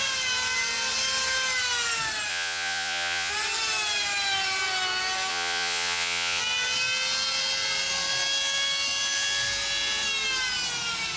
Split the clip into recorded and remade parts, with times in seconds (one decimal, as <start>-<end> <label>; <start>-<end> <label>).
0.0-2.3 recorded; 2.3-3.3 remade; 3.3-5.3 recorded; 5.3-6.4 remade; 6.4-11.2 recorded